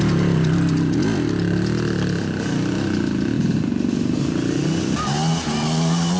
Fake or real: real